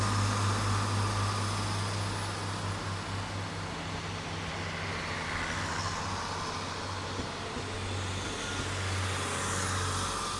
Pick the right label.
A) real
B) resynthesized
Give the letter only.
A